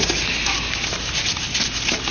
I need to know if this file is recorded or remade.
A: recorded